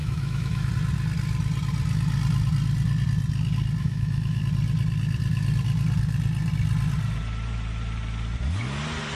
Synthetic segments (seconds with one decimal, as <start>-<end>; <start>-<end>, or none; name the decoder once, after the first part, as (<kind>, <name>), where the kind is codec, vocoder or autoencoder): 0.0-0.7 (autoencoder, DAC-VAE); 3.8-4.4